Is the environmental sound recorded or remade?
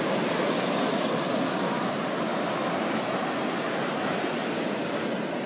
recorded